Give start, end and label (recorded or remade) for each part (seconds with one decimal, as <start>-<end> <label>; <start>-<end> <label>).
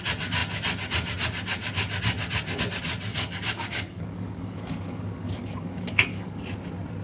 0.0-3.1 recorded; 3.1-6.4 remade; 6.4-7.0 recorded